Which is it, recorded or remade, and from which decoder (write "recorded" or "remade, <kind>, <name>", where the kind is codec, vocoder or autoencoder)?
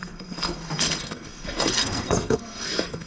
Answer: remade, codec, SNAC